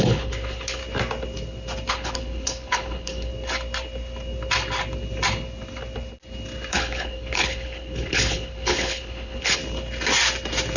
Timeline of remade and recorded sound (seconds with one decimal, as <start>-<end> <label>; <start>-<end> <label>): 0.0-0.8 remade; 0.8-1.9 recorded; 1.9-3.3 remade; 3.3-6.7 recorded; 6.7-9.6 remade; 9.6-10.8 recorded